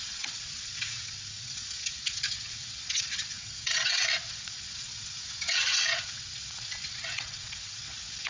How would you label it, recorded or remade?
remade